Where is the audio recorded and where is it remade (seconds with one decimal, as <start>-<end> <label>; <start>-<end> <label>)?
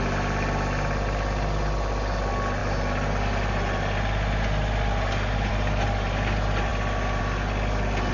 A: 0.0-8.1 recorded